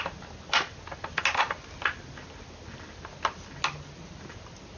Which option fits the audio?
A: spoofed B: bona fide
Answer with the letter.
B